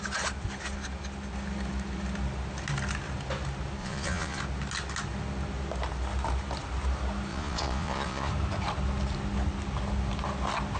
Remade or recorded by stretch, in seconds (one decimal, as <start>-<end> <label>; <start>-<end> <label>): 0.0-3.8 recorded; 3.8-4.4 remade; 4.4-7.3 recorded; 7.3-8.3 remade; 8.3-10.8 recorded